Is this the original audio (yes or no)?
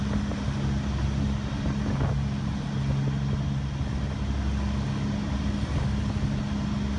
yes